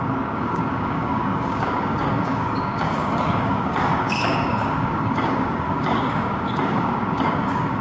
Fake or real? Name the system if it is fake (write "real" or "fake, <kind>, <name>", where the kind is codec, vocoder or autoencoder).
fake, codec, DAC